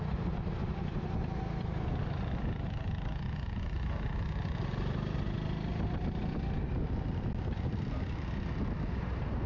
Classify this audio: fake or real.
real